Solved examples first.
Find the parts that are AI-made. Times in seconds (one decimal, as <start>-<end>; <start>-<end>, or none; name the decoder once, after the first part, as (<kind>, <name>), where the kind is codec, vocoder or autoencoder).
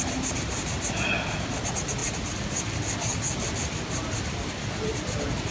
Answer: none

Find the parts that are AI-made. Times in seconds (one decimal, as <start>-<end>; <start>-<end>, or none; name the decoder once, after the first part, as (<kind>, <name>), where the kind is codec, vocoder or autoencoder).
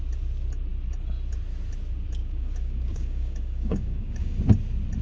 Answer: 2.2-4.4 (codec, DAC)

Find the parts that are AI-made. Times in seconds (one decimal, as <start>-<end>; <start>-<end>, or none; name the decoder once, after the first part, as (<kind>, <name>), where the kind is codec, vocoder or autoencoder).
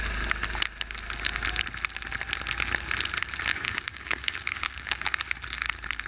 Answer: 3.5-5.2 (codec, DAC)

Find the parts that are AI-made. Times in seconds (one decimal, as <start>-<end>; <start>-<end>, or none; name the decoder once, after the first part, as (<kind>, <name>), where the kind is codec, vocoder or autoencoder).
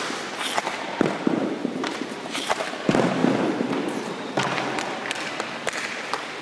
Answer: 1.6-2.7 (vocoder, BigVGAN v2); 3.2-4.3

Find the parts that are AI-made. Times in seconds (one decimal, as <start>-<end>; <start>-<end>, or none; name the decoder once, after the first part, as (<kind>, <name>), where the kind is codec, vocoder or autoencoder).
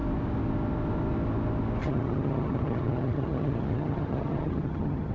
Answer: 1.8-5.1 (vocoder, HiFi-GAN)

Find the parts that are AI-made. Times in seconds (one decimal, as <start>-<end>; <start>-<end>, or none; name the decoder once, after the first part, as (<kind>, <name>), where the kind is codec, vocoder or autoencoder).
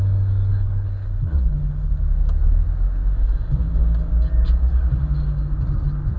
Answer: 0.5-1.9 (codec, HILCodec)